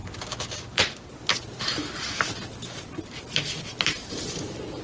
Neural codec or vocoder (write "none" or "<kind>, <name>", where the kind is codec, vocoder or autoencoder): none